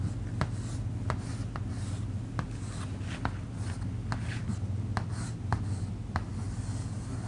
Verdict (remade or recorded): recorded